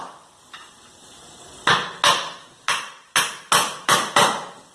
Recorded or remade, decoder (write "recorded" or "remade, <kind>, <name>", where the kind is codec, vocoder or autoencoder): recorded